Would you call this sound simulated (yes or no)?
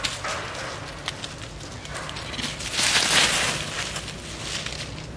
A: no